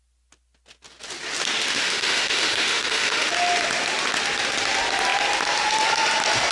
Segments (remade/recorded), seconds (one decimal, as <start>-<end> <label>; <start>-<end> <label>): 0.0-1.7 recorded; 1.7-3.3 remade; 3.3-6.5 recorded